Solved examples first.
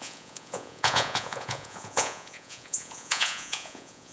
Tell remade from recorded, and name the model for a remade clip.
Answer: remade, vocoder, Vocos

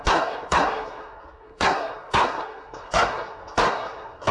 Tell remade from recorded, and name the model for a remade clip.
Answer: remade, codec, SNAC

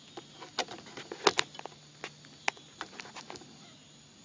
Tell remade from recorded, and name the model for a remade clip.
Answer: recorded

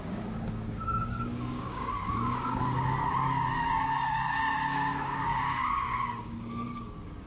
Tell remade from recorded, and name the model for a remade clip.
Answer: remade, codec, DAC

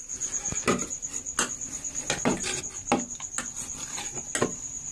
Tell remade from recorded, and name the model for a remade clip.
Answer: recorded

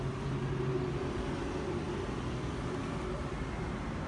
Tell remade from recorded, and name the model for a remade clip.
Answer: recorded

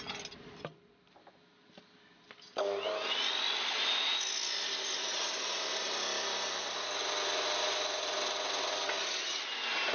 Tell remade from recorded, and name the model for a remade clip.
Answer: recorded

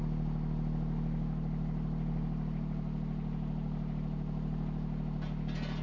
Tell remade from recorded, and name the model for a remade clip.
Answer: recorded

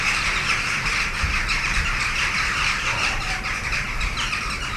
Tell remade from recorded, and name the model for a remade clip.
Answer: remade, vocoder, BigVGAN v2